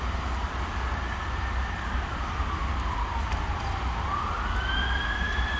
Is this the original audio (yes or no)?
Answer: yes